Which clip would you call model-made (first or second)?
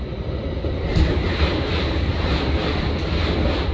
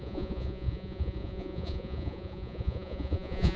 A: second